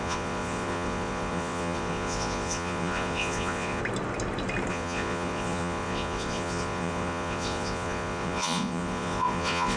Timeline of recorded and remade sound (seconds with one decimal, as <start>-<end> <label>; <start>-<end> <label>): 0.0-3.8 remade; 3.8-4.7 recorded; 4.7-9.8 remade